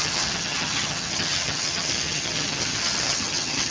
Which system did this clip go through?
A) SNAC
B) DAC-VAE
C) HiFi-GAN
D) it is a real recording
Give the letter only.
C